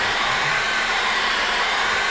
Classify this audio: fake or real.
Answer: fake